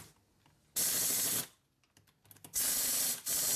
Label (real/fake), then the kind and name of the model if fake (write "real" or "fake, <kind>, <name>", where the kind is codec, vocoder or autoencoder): real